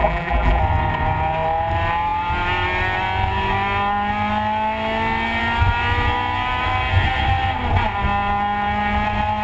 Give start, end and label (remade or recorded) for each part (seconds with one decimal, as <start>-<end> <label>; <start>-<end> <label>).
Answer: 0.0-0.6 remade; 0.6-9.4 recorded

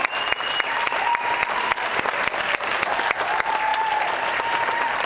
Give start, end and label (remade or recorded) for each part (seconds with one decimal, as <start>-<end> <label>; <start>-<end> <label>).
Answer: 0.0-3.7 recorded; 3.7-5.1 remade

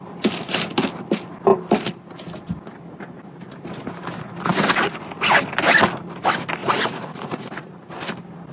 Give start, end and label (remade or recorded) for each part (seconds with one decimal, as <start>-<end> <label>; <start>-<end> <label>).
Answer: 0.0-6.6 recorded; 6.6-7.9 remade; 7.9-8.5 recorded

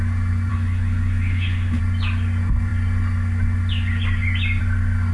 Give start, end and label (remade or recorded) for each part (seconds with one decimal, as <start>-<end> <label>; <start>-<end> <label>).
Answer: 0.0-0.5 recorded; 0.5-1.8 remade; 1.8-5.1 recorded

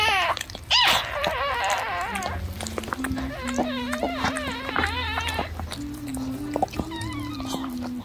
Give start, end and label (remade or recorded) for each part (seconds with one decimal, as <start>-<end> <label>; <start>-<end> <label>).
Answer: 0.0-8.0 recorded

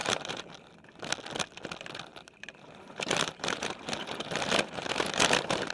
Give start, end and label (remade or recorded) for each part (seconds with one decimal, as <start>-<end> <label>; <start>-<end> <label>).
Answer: 0.0-0.7 remade; 0.7-2.1 recorded; 2.1-5.7 remade